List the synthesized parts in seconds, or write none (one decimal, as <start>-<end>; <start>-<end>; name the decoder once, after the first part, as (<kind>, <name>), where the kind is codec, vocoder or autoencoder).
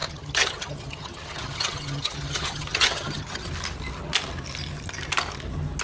0.0-3.5 (vocoder, HiFi-GAN)